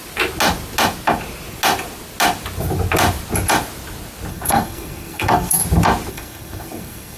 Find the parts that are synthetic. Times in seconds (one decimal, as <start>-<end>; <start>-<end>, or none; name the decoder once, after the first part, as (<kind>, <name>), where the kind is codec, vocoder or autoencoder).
4.3-5.6 (codec, SNAC); 6.1-7.2